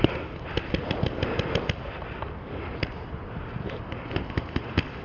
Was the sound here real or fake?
real